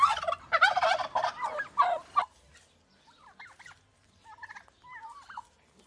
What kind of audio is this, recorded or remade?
recorded